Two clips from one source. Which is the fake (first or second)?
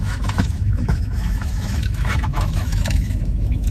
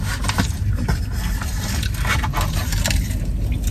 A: first